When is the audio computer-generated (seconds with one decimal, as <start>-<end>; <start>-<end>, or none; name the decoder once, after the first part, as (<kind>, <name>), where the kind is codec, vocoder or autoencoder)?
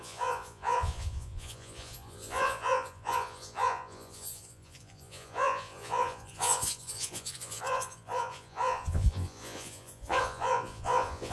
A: 0.0-11.3 (vocoder, Vocos)